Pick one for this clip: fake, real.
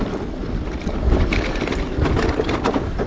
real